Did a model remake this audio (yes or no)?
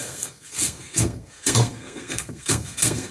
yes